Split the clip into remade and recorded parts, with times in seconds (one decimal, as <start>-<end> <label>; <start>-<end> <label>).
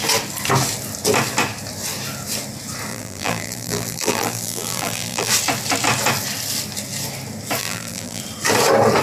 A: 0.0-2.9 recorded; 2.9-5.3 remade; 5.3-7.6 recorded; 7.6-8.2 remade; 8.2-9.0 recorded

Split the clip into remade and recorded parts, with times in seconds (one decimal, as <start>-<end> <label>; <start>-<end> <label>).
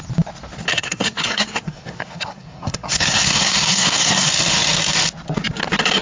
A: 0.0-0.7 recorded; 0.7-4.3 remade; 4.3-6.0 recorded